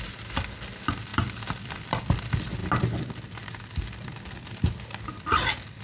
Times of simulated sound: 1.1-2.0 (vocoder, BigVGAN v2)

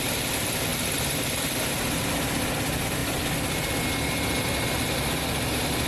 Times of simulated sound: none

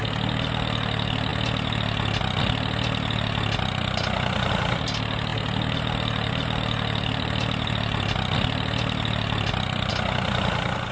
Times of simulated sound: 5.3-9.9 (vocoder, BigVGAN v2)

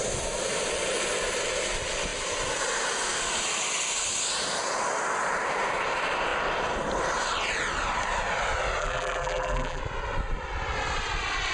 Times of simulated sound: 8.8-9.8 (vocoder, BigVGAN v2)

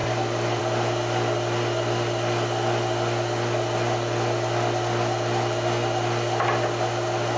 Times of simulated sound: none